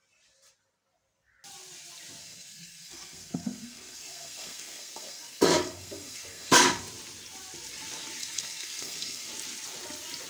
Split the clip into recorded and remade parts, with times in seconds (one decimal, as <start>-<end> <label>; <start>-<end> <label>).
0.0-2.2 recorded; 2.2-6.8 remade; 6.8-8.2 recorded; 8.2-9.3 remade; 9.3-10.3 recorded